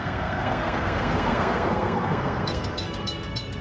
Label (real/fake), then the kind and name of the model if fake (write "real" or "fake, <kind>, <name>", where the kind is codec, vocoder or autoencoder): fake, codec, SNAC